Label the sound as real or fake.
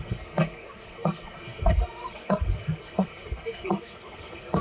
fake